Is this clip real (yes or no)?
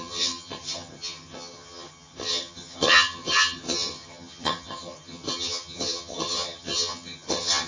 no